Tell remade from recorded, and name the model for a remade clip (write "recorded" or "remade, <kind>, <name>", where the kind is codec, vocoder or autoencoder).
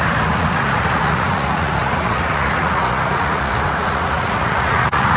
remade, vocoder, Vocos